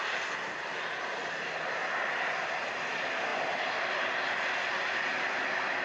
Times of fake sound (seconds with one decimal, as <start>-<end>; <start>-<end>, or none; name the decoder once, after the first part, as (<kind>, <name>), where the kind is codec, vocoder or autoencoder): none